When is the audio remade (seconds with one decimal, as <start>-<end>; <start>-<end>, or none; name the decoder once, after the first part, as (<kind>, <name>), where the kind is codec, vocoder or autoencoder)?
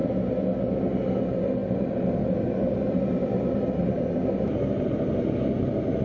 none